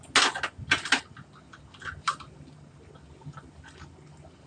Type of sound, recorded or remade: recorded